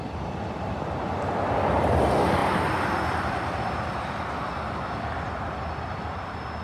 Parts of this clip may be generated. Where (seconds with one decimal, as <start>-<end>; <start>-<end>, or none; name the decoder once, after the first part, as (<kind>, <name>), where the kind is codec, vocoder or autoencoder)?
none